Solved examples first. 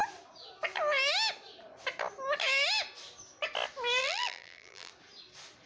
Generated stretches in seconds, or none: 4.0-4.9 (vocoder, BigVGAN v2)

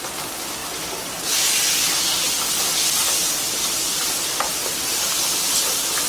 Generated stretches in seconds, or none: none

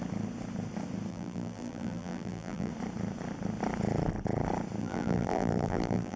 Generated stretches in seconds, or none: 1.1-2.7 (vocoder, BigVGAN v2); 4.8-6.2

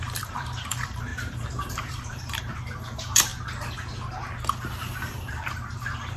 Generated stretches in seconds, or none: 0.0-3.3 (vocoder, BigVGAN v2); 4.8-6.2

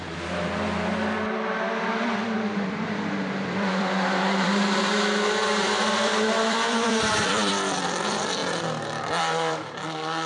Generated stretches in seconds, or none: 0.0-8.4 (vocoder, BigVGAN v2); 9.2-10.3

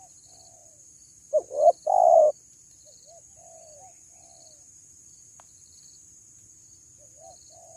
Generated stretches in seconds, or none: none

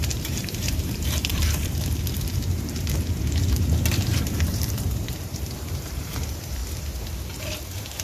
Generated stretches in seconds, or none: 0.0-6.6 (vocoder, BigVGAN v2); 7.4-8.0

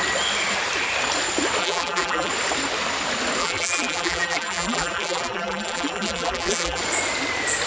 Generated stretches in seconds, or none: 1.6-2.3 (vocoder, BigVGAN v2); 3.4-6.8